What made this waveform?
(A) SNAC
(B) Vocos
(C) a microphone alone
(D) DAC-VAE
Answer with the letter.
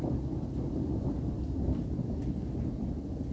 C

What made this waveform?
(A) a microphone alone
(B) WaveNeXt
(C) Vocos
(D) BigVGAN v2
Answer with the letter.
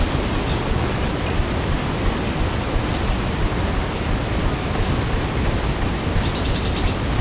A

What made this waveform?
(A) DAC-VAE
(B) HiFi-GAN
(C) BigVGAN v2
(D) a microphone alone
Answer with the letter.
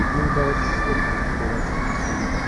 D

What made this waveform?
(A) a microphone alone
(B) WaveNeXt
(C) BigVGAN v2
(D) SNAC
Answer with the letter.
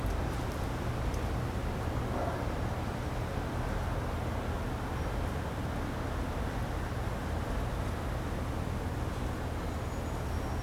A